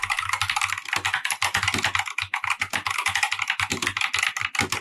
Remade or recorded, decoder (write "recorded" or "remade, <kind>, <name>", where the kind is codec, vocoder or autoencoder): recorded